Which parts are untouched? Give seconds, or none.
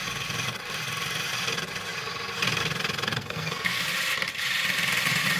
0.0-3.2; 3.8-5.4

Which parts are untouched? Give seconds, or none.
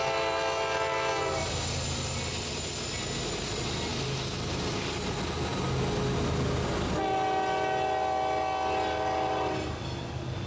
0.0-10.5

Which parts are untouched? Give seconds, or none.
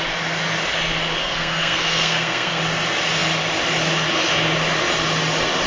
0.0-1.2; 2.6-5.7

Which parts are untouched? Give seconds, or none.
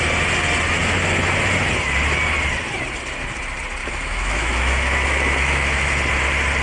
0.0-3.8; 6.0-6.6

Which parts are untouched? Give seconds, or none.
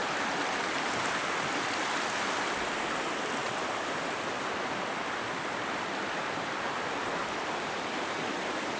1.8-3.4; 6.8-8.8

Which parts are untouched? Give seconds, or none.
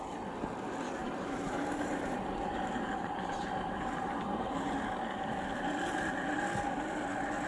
0.0-1.0; 4.7-7.5